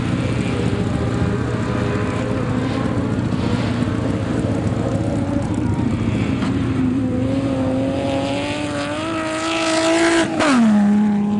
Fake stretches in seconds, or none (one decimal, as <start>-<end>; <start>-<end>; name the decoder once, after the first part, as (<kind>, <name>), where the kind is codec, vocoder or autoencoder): 4.3-7.0 (vocoder, BigVGAN v2)